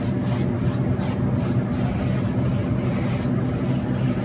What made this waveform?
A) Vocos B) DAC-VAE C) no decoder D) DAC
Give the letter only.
C